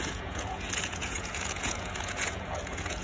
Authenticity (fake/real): fake